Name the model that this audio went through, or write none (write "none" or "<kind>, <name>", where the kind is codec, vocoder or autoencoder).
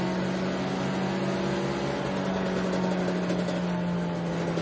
none